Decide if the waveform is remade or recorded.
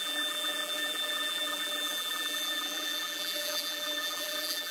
remade